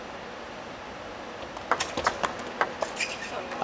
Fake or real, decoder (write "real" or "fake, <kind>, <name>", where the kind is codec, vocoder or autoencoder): real